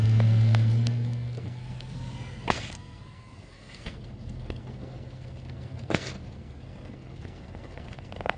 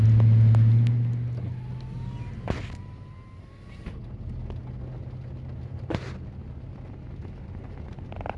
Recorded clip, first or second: second